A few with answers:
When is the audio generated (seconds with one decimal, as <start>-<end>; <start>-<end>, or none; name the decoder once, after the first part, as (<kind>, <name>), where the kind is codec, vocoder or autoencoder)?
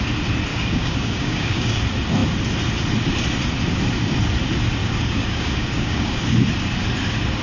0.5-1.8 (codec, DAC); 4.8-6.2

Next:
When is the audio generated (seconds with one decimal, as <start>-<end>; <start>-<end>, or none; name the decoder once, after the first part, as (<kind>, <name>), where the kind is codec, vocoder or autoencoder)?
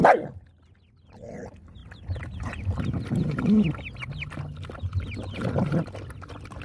none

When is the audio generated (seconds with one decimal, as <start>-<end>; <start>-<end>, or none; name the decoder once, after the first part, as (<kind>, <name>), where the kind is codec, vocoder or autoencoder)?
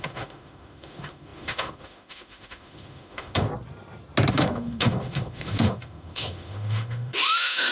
0.0-3.5 (autoencoder, DAC-VAE); 4.3-7.7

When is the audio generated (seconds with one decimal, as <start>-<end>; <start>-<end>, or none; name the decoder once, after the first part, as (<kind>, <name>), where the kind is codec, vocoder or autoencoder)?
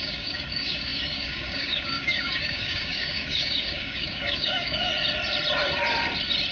0.0-4.9 (codec, DAC)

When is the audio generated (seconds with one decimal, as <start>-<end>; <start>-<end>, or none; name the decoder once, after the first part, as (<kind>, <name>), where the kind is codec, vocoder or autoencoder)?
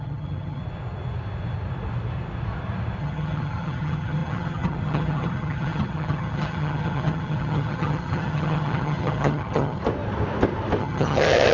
0.0-0.6 (vocoder, HiFi-GAN); 3.0-9.8; 10.8-11.5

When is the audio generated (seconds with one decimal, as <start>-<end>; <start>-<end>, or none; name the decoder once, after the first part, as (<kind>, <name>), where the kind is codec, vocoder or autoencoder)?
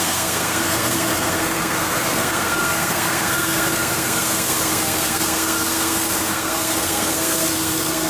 0.0-8.1 (codec, SNAC)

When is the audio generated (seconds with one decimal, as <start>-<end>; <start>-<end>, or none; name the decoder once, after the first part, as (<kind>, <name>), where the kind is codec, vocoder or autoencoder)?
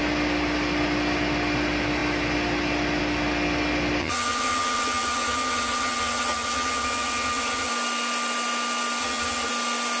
4.0-7.7 (vocoder, HiFi-GAN); 9.0-9.5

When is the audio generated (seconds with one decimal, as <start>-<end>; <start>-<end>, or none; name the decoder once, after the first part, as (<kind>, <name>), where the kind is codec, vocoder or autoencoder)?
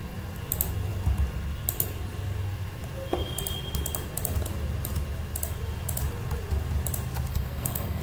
7.3-8.0 (codec, SNAC)